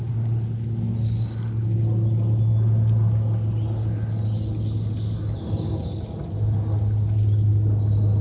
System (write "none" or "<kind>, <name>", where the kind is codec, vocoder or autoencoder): none